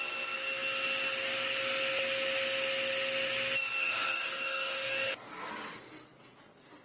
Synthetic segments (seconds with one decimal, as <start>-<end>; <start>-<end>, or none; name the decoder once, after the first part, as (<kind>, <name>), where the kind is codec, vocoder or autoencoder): 3.8-5.5 (codec, DAC)